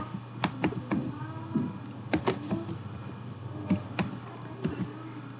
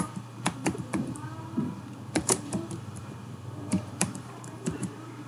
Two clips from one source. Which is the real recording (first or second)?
first